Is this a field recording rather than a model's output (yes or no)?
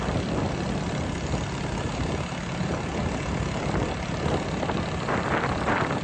no